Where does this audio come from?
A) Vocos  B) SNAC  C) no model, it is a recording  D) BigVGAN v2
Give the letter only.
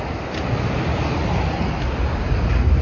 C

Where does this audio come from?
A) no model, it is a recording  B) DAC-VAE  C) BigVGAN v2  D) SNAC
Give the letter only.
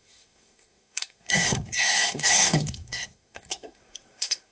D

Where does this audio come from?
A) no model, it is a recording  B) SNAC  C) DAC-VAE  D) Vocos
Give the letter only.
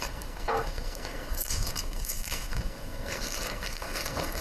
B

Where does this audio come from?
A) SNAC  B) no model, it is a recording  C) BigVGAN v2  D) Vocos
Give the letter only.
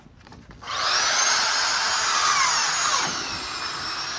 B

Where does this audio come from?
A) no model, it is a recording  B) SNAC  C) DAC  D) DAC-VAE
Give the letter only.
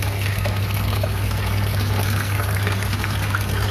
B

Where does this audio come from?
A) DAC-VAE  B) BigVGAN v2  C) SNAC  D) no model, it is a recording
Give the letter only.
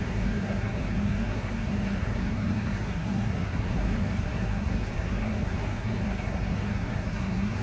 C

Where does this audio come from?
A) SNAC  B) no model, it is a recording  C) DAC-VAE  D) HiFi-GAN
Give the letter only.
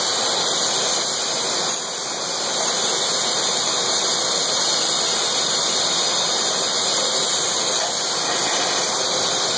B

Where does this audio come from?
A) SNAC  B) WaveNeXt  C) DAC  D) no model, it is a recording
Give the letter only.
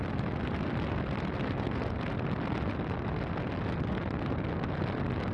D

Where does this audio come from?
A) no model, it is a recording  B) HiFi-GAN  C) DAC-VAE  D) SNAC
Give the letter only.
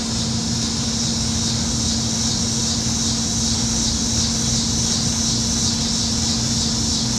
A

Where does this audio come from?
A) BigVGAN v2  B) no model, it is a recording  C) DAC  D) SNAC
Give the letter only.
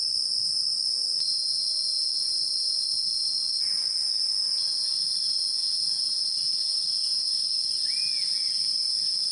B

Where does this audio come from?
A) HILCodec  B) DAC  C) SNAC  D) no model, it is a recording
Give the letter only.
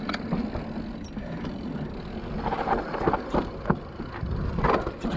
D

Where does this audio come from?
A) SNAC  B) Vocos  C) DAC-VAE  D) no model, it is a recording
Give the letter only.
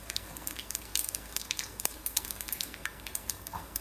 A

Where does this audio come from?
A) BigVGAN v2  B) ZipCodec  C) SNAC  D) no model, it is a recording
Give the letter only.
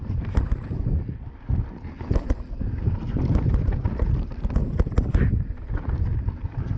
D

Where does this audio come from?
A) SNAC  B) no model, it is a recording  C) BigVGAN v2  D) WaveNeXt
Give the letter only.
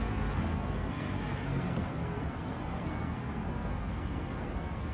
A